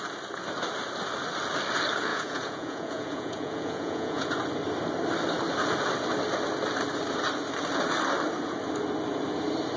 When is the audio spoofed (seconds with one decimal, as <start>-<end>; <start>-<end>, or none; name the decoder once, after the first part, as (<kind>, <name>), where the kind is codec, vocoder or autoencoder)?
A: 2.1-4.3 (vocoder, Vocos)